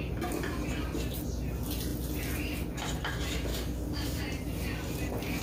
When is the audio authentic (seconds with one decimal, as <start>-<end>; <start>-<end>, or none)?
0.0-3.5; 4.2-5.4